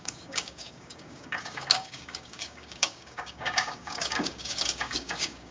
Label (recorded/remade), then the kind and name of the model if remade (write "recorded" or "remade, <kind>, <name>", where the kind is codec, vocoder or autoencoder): remade, codec, DAC